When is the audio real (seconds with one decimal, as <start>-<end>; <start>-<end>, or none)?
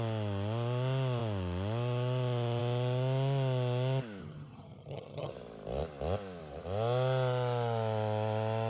0.0-4.2; 5.3-8.7